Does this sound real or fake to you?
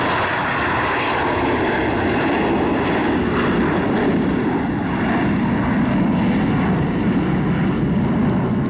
real